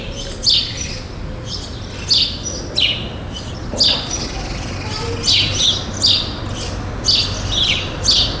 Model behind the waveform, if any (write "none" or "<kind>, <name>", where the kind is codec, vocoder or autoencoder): none